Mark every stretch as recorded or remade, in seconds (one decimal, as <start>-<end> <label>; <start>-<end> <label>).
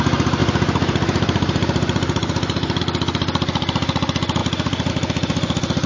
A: 0.0-0.4 recorded; 0.4-2.8 remade; 2.8-4.4 recorded; 4.4-4.9 remade; 4.9-5.9 recorded